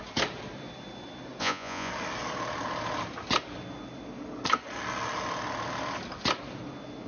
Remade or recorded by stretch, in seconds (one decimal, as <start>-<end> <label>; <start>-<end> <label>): 0.0-1.4 recorded; 1.4-1.9 remade; 1.9-7.1 recorded